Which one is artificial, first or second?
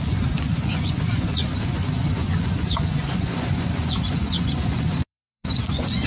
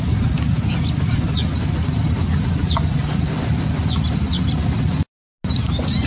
first